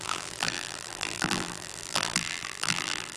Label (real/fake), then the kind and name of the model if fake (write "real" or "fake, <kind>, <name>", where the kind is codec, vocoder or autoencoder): fake, vocoder, BigVGAN v2